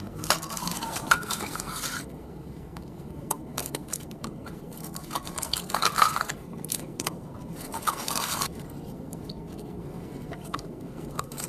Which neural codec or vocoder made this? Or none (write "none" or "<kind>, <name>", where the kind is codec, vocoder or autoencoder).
codec, SNAC